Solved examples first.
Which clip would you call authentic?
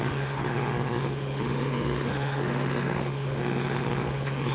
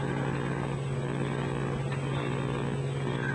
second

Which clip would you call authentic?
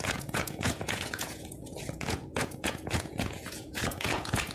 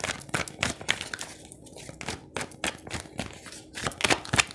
second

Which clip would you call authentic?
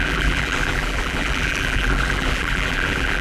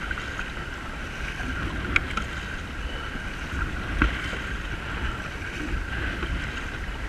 second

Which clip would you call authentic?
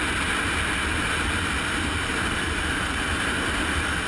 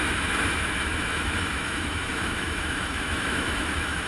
first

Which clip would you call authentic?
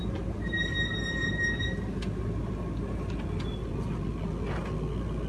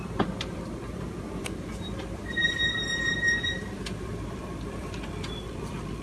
first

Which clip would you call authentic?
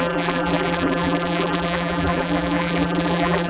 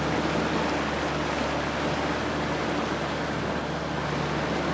second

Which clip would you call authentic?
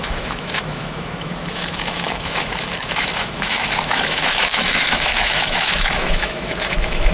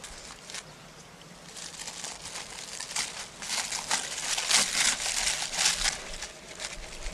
second